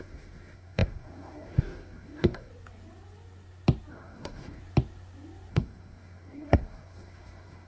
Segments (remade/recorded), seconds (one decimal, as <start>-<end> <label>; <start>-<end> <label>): 0.0-2.5 remade; 2.5-3.9 recorded; 3.9-4.6 remade; 4.6-5.5 recorded; 5.5-7.7 remade